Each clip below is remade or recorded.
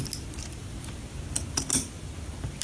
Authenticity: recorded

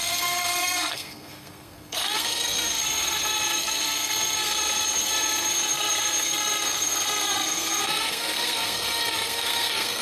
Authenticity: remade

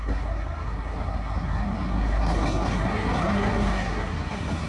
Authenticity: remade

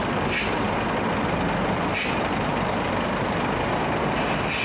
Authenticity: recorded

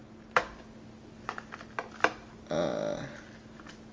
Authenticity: recorded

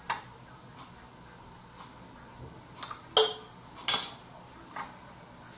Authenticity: recorded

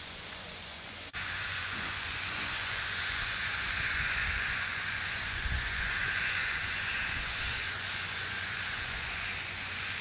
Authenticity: remade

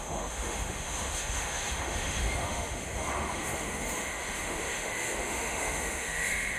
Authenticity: remade